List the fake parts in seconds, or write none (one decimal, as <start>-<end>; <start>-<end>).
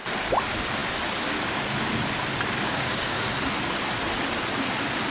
2.6-3.2